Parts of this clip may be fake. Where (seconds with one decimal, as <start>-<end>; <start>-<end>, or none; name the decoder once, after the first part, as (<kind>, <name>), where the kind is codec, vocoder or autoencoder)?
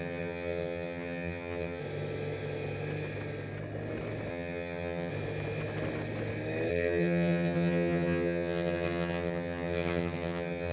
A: 0.0-1.8 (vocoder, HiFi-GAN); 4.3-5.1; 6.7-10.7